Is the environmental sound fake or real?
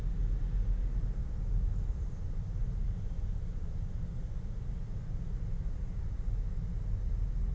real